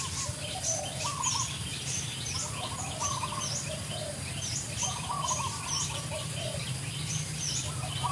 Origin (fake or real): real